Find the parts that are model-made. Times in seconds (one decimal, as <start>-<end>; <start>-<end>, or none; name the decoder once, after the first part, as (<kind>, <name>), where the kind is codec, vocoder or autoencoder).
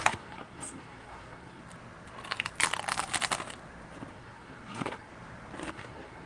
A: 0.0-1.6 (codec, SNAC); 4.1-5.1; 5.7-6.3